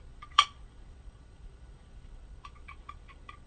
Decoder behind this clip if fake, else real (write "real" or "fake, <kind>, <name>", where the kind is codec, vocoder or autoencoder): fake, vocoder, Vocos